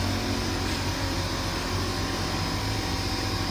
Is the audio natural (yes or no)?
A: yes